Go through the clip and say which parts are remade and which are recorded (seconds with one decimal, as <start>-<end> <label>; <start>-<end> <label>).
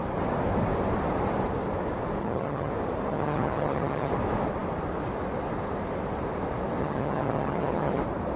0.0-2.2 recorded; 2.2-2.7 remade; 2.7-3.1 recorded; 3.1-4.1 remade; 4.1-6.8 recorded; 6.8-8.0 remade; 8.0-8.4 recorded